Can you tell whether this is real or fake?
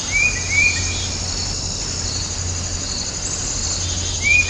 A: real